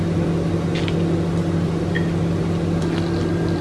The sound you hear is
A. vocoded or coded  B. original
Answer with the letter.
B